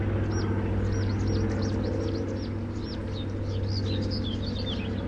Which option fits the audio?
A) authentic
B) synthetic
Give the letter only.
A